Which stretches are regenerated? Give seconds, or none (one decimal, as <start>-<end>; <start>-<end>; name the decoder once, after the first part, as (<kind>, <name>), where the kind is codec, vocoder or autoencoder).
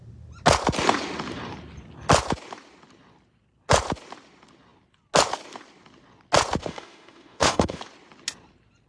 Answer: 6.6-7.8 (autoencoder, DAC-VAE)